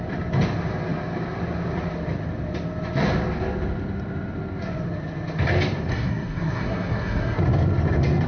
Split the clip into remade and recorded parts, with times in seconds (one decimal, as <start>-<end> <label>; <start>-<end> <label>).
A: 0.0-5.9 recorded; 5.9-7.4 remade; 7.4-8.3 recorded